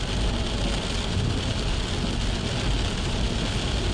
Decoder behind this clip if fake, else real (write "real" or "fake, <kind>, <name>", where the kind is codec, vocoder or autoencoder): real